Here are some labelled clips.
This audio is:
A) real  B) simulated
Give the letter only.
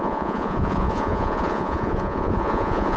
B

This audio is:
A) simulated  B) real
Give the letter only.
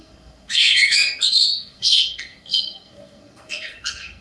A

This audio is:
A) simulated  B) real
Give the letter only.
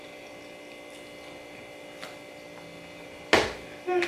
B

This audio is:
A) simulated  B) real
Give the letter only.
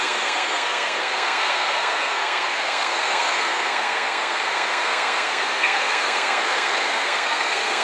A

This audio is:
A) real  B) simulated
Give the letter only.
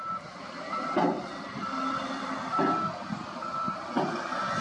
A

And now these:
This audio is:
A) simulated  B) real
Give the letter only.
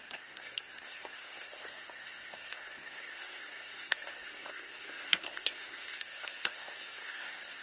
A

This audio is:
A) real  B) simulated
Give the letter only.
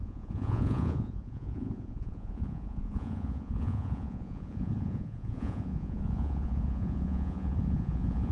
B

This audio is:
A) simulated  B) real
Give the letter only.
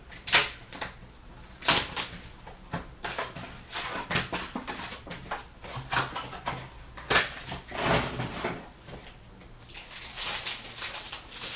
B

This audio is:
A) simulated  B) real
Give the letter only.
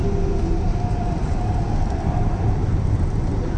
B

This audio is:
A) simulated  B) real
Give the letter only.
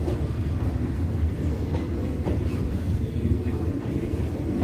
A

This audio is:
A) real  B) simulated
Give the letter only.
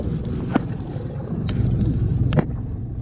A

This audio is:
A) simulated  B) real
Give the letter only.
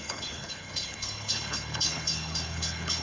A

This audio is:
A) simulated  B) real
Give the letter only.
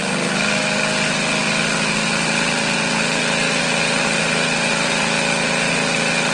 B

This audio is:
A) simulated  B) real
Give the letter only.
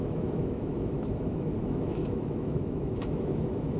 A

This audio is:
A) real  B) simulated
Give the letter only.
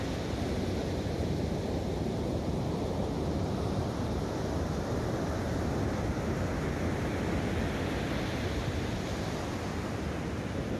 A